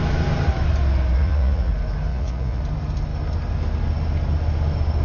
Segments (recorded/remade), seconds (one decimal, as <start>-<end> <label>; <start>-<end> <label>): 0.0-1.2 recorded; 1.2-1.7 remade; 1.7-2.1 recorded; 2.1-2.6 remade; 2.6-5.0 recorded